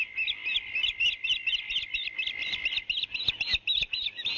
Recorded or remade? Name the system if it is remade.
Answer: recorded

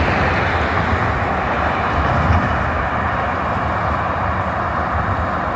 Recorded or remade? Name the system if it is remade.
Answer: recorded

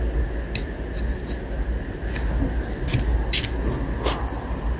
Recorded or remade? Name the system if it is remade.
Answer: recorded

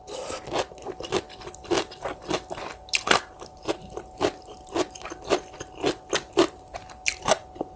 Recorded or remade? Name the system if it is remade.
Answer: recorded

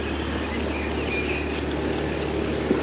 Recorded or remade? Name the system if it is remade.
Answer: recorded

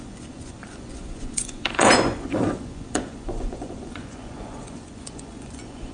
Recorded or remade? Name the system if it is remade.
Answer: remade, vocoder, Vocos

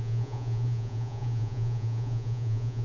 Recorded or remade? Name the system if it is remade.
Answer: remade, vocoder, Vocos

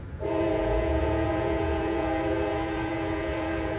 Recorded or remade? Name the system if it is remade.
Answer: remade, vocoder, Vocos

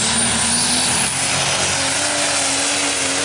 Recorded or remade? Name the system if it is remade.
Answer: recorded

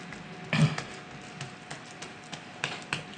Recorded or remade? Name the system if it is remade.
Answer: recorded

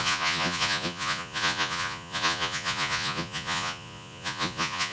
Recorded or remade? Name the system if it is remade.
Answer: remade, vocoder, Vocos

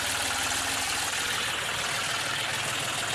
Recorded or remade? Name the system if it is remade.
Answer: recorded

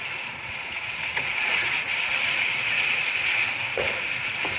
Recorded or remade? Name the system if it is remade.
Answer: remade, vocoder, Vocos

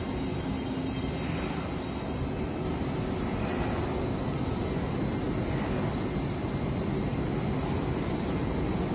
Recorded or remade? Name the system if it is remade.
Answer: recorded